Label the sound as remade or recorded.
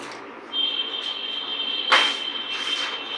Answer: recorded